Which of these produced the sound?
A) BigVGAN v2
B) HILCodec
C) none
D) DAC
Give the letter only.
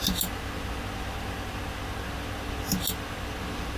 C